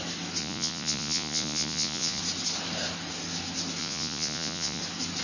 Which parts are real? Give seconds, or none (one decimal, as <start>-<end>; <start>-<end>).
0.0-0.4; 2.2-3.8; 4.8-5.2